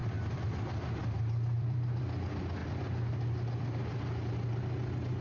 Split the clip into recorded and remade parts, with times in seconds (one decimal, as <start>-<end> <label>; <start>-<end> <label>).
0.0-0.5 remade; 0.5-1.0 recorded; 1.0-2.0 remade; 2.0-2.6 recorded; 2.6-4.2 remade; 4.2-5.2 recorded